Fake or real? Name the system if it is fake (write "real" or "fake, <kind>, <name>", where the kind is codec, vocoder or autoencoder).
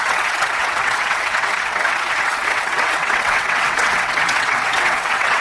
fake, vocoder, WaveNeXt